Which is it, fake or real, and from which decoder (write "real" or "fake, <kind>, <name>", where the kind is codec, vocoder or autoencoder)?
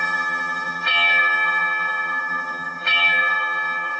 fake, vocoder, HiFi-GAN